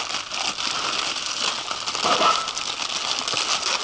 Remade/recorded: recorded